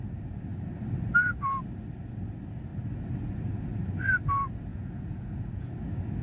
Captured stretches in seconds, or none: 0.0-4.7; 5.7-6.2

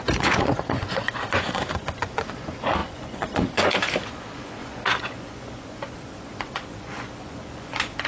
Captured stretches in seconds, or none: none

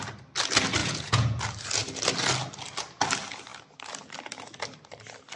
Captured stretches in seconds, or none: 0.0-0.8; 1.4-5.4

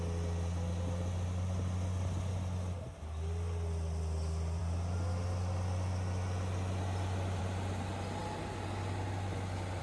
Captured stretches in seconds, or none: 0.0-9.8

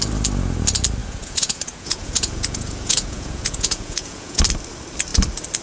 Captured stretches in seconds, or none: 0.0-1.0; 4.4-5.6

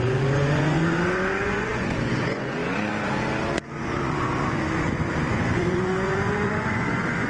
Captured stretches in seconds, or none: none